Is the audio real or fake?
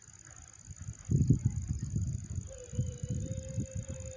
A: real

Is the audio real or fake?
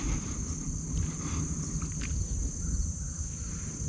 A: real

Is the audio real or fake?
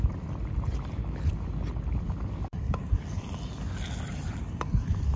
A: real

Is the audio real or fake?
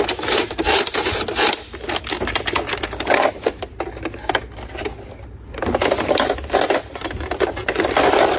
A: real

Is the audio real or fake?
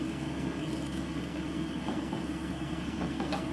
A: fake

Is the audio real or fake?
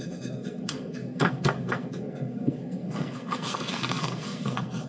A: fake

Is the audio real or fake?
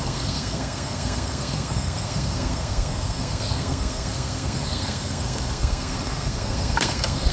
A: fake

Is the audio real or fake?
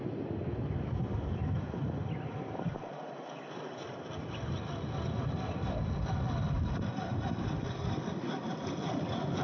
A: real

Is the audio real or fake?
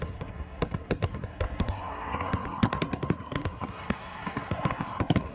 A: fake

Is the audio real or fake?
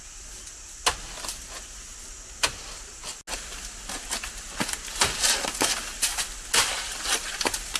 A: real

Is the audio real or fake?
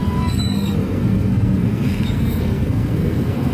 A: fake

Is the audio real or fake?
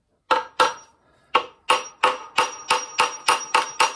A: real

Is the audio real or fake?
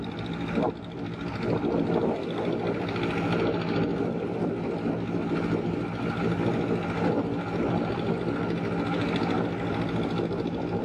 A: real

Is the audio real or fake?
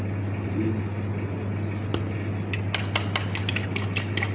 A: real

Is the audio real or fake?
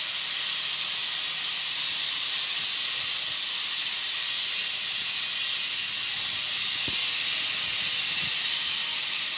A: real